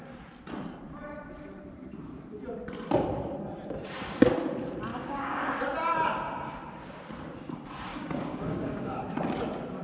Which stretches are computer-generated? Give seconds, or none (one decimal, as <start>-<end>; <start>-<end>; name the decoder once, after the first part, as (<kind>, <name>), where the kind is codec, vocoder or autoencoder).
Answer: 4.9-5.6 (codec, DAC); 7.9-9.0